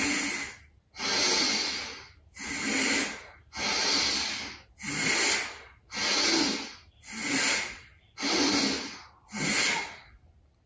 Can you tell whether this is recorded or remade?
recorded